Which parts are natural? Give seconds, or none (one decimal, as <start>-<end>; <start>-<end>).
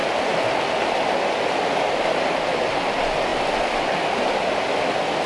0.0-5.3